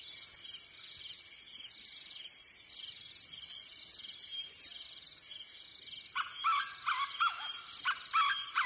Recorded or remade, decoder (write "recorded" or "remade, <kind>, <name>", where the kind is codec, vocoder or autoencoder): recorded